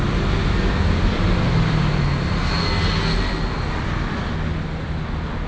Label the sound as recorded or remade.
recorded